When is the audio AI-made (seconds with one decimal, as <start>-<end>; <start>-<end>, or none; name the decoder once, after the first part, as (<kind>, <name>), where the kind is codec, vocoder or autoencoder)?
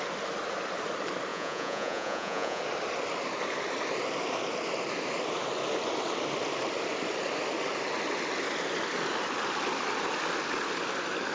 1.3-2.6 (vocoder, Vocos)